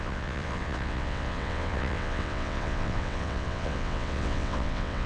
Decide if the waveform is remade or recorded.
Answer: remade